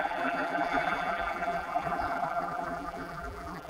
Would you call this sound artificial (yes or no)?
yes